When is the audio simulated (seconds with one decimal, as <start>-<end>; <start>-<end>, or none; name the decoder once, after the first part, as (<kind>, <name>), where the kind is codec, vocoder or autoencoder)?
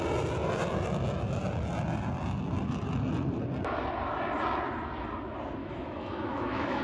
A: 5.6-6.8 (autoencoder, DAC-VAE)